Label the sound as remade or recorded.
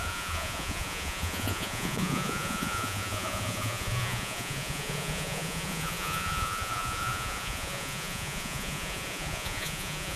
remade